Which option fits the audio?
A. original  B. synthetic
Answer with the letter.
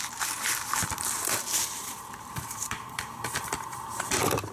B